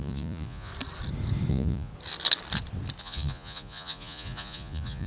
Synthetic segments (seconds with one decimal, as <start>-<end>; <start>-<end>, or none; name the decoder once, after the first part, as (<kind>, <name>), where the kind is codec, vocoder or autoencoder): 0.0-0.7 (vocoder, Vocos); 1.5-1.9; 3.0-5.1